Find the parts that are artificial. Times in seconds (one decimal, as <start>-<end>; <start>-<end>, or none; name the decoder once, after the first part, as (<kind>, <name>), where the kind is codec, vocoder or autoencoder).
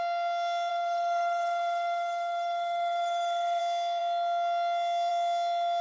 0.7-3.6 (codec, SNAC)